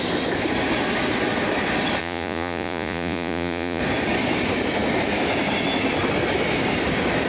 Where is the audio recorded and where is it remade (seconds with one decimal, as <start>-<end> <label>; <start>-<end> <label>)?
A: 0.0-2.0 recorded; 2.0-3.8 remade; 3.8-7.3 recorded